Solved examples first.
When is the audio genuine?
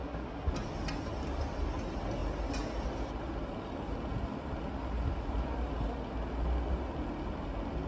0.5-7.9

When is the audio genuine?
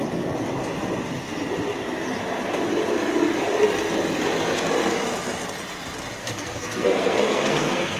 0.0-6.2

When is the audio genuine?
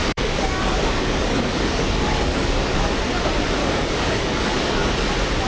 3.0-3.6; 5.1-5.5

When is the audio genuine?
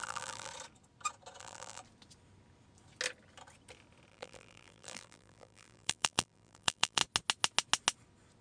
0.5-1.4; 1.8-4.1; 7.0-8.4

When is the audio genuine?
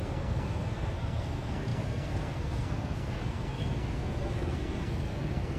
none